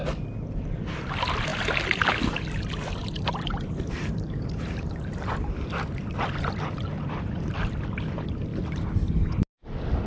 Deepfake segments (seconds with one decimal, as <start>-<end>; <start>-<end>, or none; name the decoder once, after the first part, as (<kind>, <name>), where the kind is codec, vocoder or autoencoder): 3.0-4.9 (vocoder, BigVGAN v2)